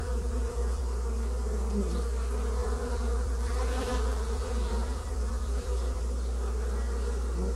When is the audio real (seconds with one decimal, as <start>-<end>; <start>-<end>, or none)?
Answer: 0.8-2.6; 6.0-7.6